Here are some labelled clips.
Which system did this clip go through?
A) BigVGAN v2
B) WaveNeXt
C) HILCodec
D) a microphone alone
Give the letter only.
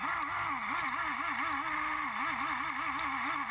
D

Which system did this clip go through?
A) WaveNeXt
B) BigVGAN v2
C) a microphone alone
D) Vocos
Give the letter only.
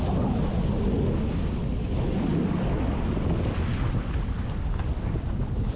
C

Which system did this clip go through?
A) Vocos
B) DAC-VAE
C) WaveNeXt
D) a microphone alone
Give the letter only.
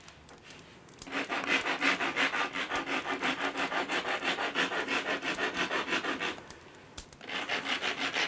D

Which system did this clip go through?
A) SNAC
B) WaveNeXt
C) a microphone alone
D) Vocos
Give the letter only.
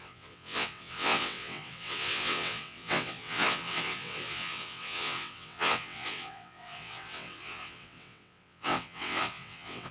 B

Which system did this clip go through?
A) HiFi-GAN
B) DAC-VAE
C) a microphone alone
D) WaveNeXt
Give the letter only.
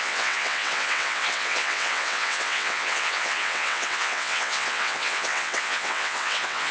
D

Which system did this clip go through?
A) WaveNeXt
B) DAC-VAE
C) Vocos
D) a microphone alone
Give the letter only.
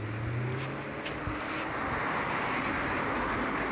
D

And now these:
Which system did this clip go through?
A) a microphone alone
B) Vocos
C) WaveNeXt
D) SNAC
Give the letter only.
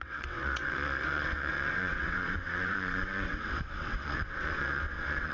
C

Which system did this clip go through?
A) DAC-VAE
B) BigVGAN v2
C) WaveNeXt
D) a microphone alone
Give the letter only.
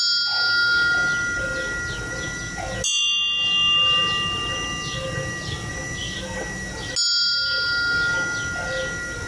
D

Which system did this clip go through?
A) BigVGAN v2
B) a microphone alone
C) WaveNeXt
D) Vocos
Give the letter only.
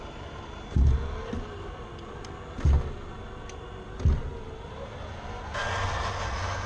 B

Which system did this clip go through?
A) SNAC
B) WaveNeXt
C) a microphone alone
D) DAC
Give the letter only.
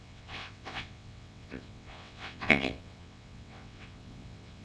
B